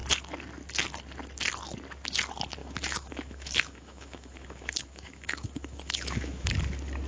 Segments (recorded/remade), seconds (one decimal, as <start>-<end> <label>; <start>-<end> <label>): 0.0-2.6 recorded; 2.6-6.5 remade; 6.5-7.1 recorded